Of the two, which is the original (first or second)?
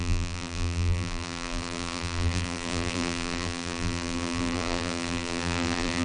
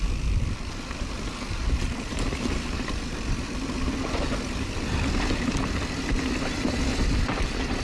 second